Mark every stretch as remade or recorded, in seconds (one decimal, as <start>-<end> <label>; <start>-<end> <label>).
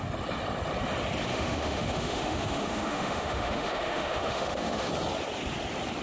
0.0-1.3 recorded; 1.3-4.9 remade; 4.9-6.0 recorded